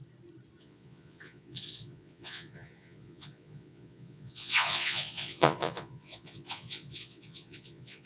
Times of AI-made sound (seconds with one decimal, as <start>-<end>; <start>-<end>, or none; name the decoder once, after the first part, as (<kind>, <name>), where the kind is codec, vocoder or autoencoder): 0.6-8.1 (vocoder, Vocos)